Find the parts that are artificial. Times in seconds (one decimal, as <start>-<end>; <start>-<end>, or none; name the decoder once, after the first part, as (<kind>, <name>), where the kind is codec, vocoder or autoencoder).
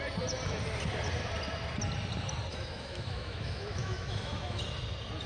2.5-4.6 (autoencoder, DAC-VAE)